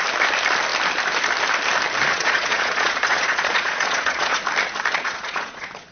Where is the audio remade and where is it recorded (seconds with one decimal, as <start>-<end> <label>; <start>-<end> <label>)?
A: 0.0-2.1 recorded; 2.1-4.4 remade; 4.4-4.9 recorded; 4.9-5.9 remade